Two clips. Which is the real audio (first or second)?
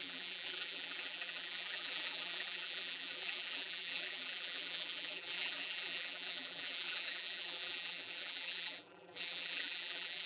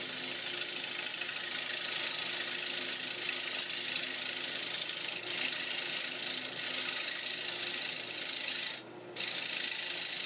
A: second